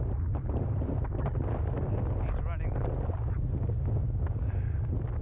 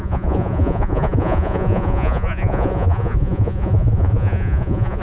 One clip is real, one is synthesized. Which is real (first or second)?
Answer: first